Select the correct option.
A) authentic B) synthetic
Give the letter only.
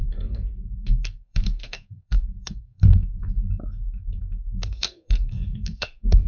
B